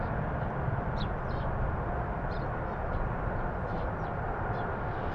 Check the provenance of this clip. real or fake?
real